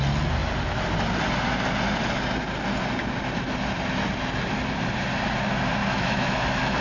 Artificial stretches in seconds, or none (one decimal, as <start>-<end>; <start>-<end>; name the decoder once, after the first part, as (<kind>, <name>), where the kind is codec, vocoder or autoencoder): 5.8-6.8 (autoencoder, DAC-VAE)